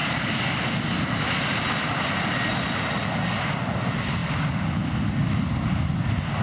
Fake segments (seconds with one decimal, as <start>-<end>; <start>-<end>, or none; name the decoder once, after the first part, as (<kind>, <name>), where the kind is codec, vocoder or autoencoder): none